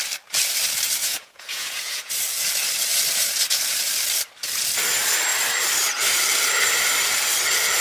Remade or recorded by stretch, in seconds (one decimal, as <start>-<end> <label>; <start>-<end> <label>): 0.0-1.0 recorded; 1.0-2.1 remade; 2.1-7.8 recorded